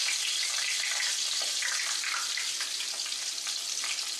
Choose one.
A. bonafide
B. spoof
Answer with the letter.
A